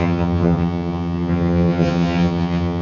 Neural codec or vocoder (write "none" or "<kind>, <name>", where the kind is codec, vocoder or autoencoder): vocoder, HiFi-GAN